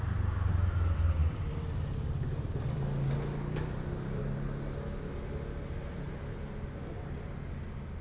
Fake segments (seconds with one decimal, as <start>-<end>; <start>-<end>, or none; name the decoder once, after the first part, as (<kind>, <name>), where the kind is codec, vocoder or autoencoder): none